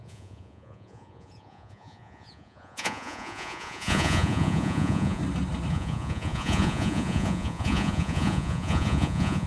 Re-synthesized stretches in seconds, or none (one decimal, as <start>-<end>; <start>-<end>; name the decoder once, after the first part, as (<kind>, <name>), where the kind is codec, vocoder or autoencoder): 0.0-5.2 (vocoder, Vocos); 5.7-9.5